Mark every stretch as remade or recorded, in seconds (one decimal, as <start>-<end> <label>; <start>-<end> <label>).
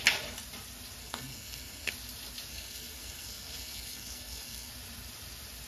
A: 0.0-1.0 recorded; 1.0-1.9 remade; 1.9-2.5 recorded; 2.5-4.7 remade; 4.7-5.7 recorded